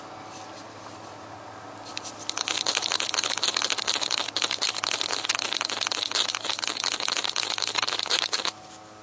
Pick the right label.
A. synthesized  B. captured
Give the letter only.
B